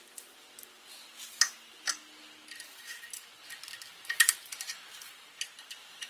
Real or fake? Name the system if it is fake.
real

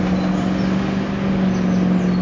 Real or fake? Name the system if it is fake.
real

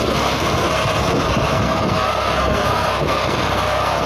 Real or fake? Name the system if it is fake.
fake, codec, SNAC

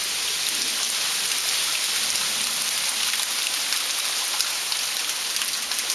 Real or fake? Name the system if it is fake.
real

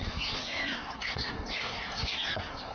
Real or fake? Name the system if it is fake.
fake, codec, SNAC